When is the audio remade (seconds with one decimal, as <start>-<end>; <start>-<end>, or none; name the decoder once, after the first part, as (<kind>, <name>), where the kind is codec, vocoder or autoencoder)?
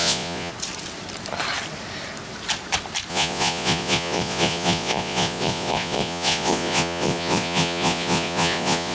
0.0-0.5 (vocoder, Vocos); 3.1-8.9